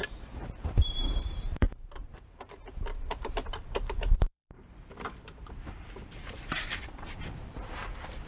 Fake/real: fake